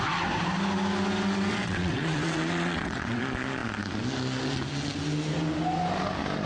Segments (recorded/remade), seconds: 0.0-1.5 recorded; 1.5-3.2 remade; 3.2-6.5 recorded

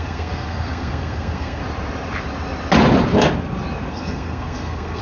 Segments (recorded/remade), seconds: 0.0-1.6 remade; 1.6-3.9 recorded; 3.9-5.0 remade

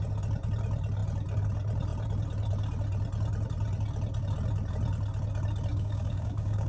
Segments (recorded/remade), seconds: 0.0-5.7 recorded; 5.7-6.7 remade

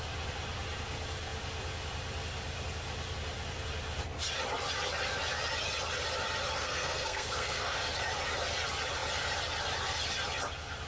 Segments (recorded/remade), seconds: 0.0-6.6 recorded; 6.6-7.8 remade; 7.8-10.9 recorded

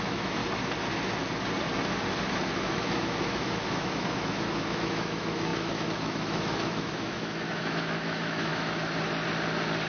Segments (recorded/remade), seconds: 0.0-0.4 remade; 0.4-2.6 recorded; 2.6-8.5 remade; 8.5-9.9 recorded

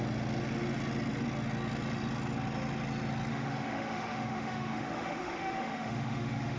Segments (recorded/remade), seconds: 0.0-3.3 recorded; 3.3-6.6 remade